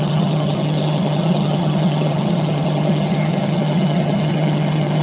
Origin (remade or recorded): remade